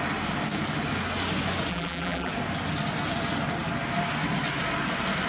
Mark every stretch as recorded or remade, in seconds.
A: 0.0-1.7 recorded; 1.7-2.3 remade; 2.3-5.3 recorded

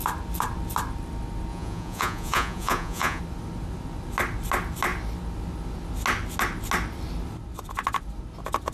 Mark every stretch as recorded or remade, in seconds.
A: 0.0-1.5 recorded; 1.5-3.2 remade; 3.2-8.7 recorded

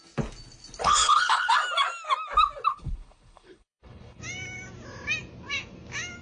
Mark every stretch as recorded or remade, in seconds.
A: 0.0-0.8 recorded; 0.8-1.5 remade; 1.5-2.7 recorded; 2.7-4.2 remade; 4.2-6.2 recorded

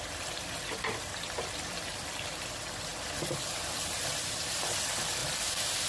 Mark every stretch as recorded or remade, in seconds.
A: 0.0-5.9 recorded

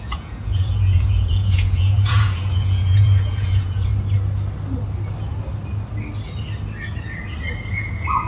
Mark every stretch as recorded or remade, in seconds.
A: 0.0-3.9 remade; 3.9-7.7 recorded; 7.7-8.3 remade

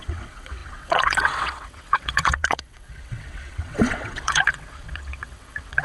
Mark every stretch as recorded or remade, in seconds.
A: 0.0-5.8 remade